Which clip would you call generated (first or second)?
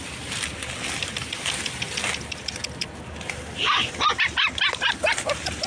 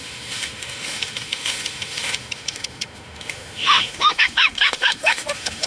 second